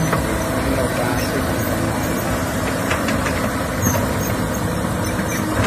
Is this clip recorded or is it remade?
remade